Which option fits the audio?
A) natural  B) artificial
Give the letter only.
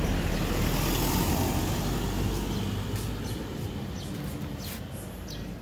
A